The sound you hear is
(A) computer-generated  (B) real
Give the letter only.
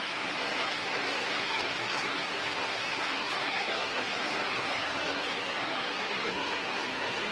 A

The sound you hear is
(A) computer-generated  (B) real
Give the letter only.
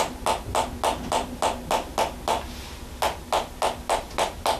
B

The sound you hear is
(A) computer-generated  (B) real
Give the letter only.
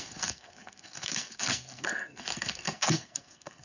A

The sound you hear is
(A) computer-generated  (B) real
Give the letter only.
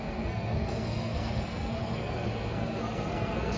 A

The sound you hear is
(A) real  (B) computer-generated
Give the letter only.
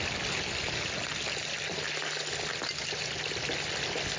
A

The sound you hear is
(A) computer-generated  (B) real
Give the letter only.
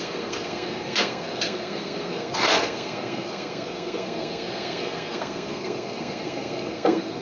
A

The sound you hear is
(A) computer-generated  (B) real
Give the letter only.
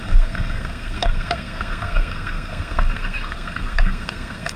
A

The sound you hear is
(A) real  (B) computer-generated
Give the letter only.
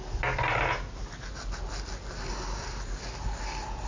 A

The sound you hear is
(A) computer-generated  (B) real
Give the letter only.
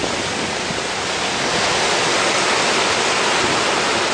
B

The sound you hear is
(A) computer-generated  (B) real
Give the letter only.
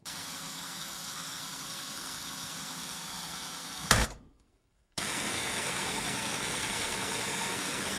A